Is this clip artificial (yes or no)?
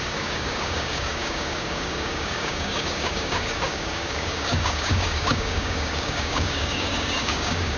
yes